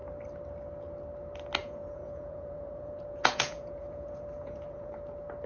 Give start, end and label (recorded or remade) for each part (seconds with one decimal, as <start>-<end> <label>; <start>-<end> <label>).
0.0-1.6 recorded; 1.6-4.9 remade; 4.9-5.5 recorded